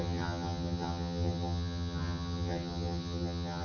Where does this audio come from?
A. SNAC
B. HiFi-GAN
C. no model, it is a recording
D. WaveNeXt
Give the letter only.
B